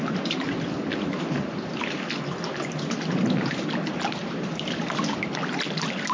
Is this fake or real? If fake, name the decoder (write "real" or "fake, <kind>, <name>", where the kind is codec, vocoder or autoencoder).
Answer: real